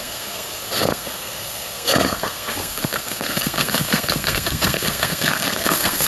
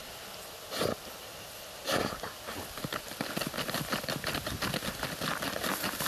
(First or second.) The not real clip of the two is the first